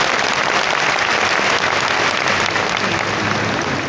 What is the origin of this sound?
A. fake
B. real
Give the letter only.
B